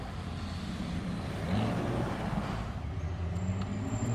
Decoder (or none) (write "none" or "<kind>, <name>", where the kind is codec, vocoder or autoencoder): none